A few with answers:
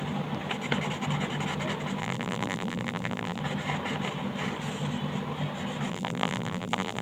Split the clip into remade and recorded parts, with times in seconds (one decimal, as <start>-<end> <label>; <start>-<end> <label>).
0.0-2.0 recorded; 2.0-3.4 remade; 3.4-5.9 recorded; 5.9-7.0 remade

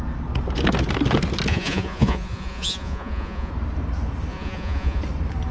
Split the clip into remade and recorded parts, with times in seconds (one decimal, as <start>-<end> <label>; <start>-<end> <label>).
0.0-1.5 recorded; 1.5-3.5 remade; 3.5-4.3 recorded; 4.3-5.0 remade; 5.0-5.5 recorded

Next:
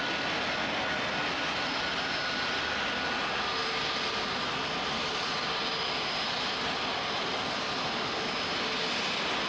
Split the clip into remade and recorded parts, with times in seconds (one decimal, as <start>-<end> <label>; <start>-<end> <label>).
0.0-3.6 recorded; 3.6-6.0 remade; 6.0-9.5 recorded

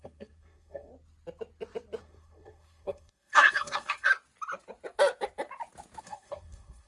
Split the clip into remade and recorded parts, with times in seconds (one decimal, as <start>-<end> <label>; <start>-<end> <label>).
0.0-0.9 remade; 0.9-2.0 recorded; 2.0-4.1 remade; 4.1-6.0 recorded; 6.0-6.9 remade

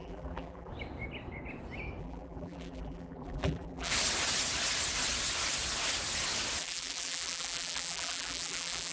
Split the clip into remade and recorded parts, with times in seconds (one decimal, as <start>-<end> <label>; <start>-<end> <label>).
0.0-0.7 remade; 0.7-2.0 recorded; 2.0-3.9 remade; 3.9-6.6 recorded; 6.6-8.9 remade

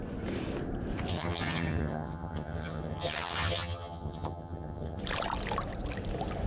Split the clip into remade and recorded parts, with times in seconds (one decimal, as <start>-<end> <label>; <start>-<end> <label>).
0.0-1.1 recorded; 1.1-5.0 remade; 5.0-6.5 recorded